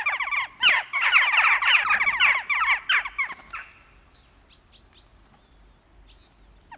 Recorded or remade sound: recorded